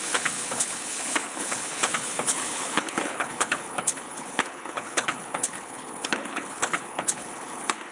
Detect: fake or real fake